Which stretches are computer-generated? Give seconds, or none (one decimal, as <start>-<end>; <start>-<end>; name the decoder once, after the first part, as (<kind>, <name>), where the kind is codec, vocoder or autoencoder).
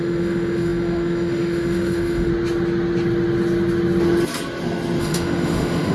0.0-2.3 (autoencoder, DAC-VAE); 5.0-5.9